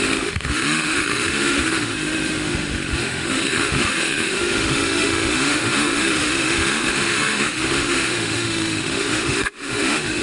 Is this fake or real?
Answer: fake